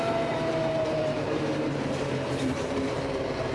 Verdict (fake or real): fake